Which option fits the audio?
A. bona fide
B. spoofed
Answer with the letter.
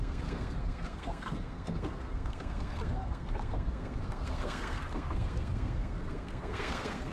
B